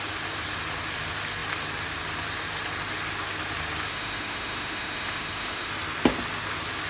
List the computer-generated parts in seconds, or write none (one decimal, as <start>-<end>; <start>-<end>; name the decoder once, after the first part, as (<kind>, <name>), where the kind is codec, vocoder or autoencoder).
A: 3.9-5.7 (autoencoder, DAC-VAE)